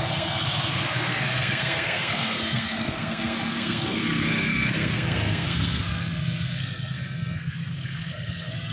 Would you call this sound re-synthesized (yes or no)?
yes